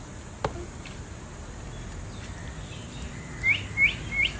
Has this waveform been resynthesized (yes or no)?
no